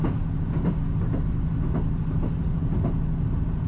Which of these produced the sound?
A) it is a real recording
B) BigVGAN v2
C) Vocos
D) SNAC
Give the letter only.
A